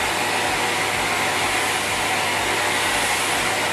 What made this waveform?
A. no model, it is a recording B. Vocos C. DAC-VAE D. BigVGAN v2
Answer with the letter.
A